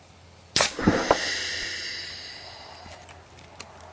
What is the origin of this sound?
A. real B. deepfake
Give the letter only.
A